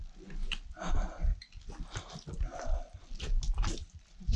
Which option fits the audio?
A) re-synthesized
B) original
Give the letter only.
B